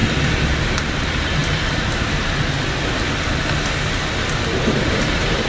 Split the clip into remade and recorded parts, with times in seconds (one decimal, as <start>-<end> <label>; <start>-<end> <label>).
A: 0.0-0.6 recorded; 0.6-1.4 remade; 1.4-4.7 recorded; 4.7-5.5 remade